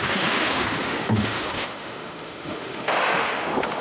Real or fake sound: fake